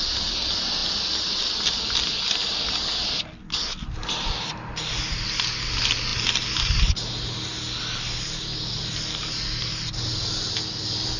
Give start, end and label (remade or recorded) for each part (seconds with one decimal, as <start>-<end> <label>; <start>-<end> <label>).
0.0-11.2 recorded